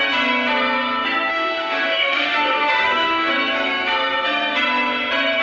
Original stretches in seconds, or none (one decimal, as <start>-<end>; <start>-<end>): 0.0-1.3; 3.3-5.4